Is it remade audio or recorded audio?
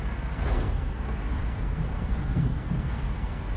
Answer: remade